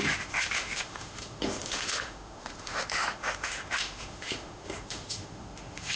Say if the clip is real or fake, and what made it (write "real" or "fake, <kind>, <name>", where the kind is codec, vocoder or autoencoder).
fake, autoencoder, DAC-VAE